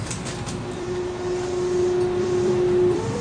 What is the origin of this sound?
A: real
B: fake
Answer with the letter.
B